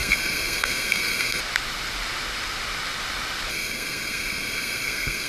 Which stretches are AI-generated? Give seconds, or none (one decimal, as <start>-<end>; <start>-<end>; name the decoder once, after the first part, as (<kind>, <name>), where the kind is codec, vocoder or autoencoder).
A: 0.0-1.4 (codec, SNAC); 3.5-5.3